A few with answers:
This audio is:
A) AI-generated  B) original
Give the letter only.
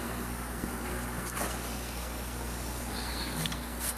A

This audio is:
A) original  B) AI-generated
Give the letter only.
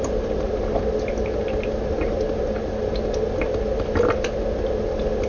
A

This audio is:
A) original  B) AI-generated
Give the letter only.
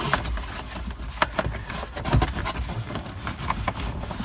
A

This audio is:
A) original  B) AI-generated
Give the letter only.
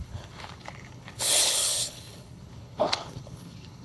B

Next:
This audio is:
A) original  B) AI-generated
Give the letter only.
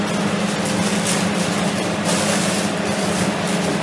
A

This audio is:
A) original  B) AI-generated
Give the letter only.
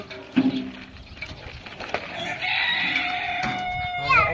A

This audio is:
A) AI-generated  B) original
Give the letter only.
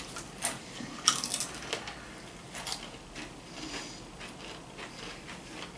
B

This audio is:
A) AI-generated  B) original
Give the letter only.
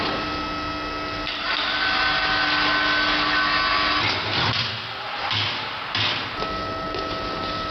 B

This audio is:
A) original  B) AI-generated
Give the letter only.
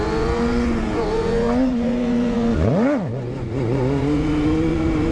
B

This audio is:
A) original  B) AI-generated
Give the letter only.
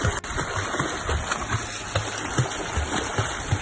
A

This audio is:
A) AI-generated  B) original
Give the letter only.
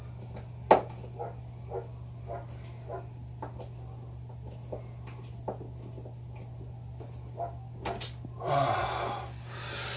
B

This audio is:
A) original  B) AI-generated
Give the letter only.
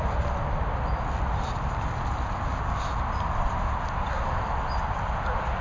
A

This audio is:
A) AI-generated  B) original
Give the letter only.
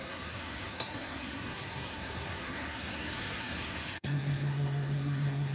A